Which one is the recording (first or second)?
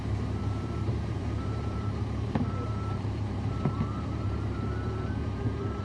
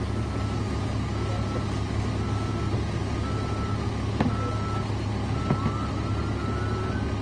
second